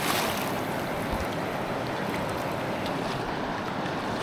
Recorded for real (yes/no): yes